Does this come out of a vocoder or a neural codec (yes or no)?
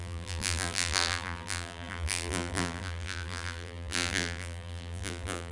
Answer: yes